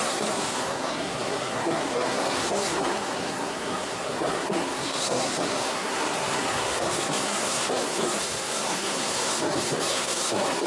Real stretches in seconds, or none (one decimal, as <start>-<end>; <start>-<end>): none